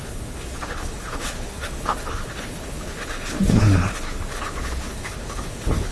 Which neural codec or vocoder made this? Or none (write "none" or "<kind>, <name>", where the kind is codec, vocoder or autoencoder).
codec, HILCodec